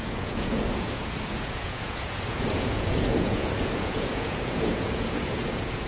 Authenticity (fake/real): fake